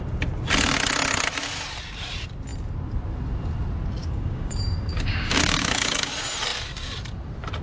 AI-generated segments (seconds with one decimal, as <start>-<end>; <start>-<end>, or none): 4.0-6.1